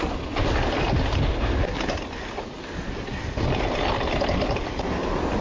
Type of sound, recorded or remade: recorded